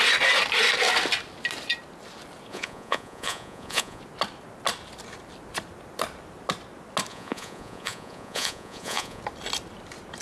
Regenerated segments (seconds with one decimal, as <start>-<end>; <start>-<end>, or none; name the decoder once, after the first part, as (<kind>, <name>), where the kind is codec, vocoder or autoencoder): 2.5-4.0 (vocoder, Vocos); 7.1-9.2